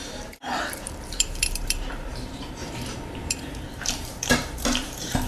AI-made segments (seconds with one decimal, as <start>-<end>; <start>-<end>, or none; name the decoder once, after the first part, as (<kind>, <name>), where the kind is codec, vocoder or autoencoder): 0.0-2.6 (vocoder, BigVGAN v2); 3.3-5.3